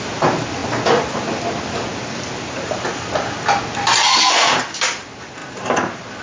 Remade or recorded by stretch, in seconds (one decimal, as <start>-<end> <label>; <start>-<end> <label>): 0.0-6.2 recorded

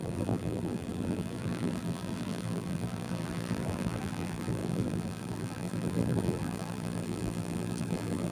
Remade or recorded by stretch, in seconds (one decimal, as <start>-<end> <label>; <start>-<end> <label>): 0.0-8.3 remade

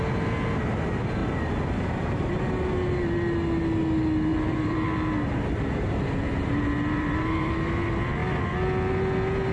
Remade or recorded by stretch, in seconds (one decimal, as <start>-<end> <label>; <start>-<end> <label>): 0.0-1.2 recorded; 1.2-2.3 remade; 2.3-4.3 recorded; 4.3-7.5 remade; 7.5-9.5 recorded